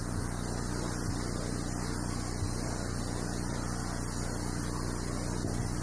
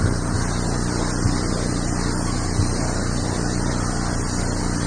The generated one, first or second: second